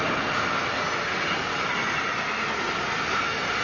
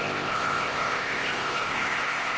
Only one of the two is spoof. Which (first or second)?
second